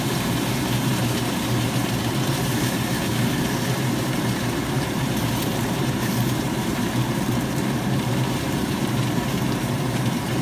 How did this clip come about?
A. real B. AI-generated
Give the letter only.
B